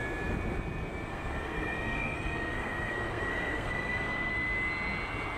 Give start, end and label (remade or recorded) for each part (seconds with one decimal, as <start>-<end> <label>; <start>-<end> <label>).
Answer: 0.0-1.1 recorded; 1.1-4.3 remade; 4.3-5.4 recorded